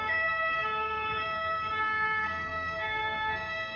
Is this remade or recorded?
remade